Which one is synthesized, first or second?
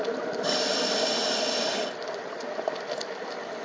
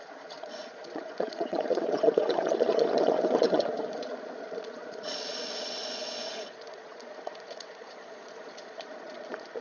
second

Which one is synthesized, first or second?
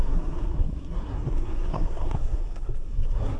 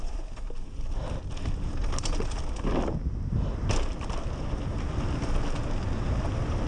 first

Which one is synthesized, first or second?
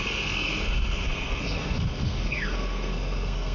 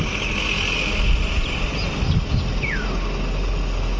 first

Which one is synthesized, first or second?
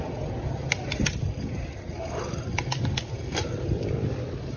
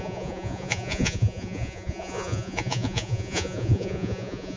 second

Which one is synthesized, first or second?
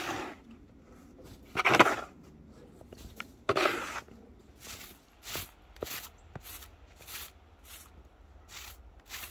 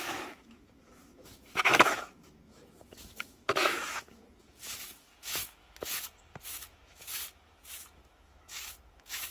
second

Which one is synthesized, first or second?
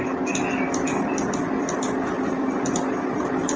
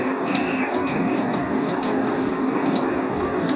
second